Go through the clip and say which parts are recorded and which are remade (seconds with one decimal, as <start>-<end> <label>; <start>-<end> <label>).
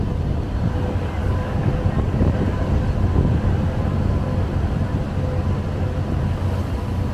0.0-1.2 recorded; 1.2-1.7 remade; 1.7-7.1 recorded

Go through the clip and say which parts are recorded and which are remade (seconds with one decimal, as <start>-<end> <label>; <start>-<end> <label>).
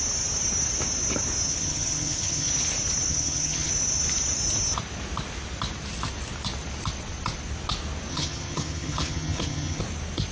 0.0-1.5 recorded; 1.5-2.5 remade; 2.5-3.1 recorded; 3.1-3.7 remade; 3.7-8.1 recorded; 8.1-9.8 remade; 9.8-10.3 recorded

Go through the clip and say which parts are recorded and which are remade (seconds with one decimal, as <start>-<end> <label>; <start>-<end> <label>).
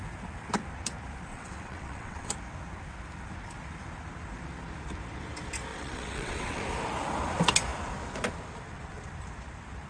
0.0-1.3 recorded; 1.3-2.3 remade; 2.3-5.7 recorded; 5.7-6.6 remade; 6.6-9.9 recorded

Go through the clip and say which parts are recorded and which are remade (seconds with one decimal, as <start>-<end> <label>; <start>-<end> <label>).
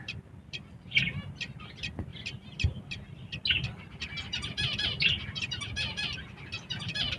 0.0-7.2 recorded